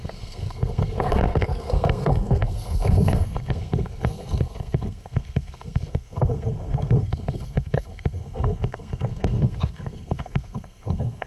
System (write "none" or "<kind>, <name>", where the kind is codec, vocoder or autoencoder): codec, SNAC